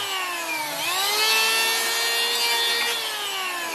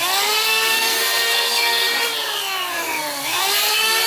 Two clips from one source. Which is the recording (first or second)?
first